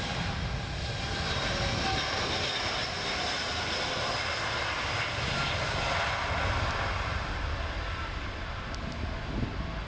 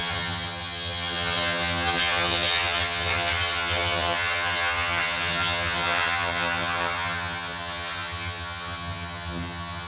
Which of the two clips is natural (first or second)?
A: first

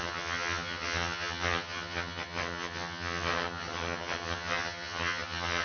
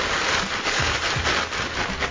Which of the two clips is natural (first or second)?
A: second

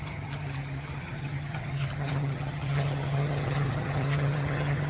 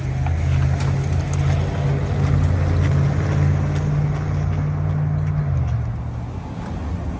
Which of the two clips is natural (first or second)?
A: second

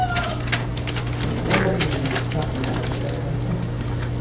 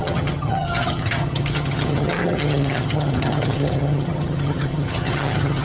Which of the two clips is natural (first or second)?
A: first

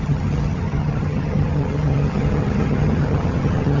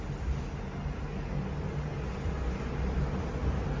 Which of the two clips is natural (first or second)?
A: second